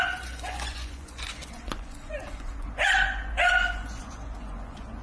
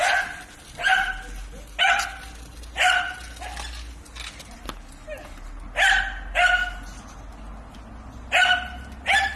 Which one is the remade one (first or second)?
first